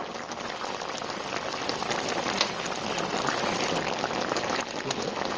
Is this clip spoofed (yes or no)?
no